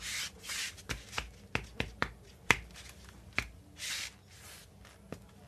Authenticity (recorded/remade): recorded